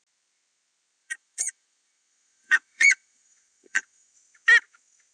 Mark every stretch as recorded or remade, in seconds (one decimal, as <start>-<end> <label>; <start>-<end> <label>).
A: 0.0-1.0 recorded; 1.0-4.1 remade; 4.1-5.1 recorded